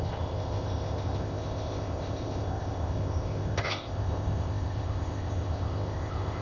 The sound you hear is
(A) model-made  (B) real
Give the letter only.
A